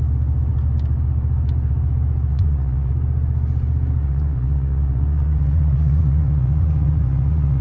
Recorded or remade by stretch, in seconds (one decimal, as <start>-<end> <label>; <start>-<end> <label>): 0.0-2.3 recorded; 2.3-2.9 remade; 2.9-4.0 recorded; 4.0-7.6 remade